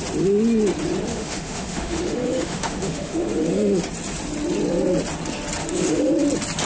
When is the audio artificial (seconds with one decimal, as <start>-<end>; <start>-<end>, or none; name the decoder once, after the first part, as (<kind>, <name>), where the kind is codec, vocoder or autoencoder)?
1.1-3.8 (autoencoder, DAC-VAE); 5.6-6.1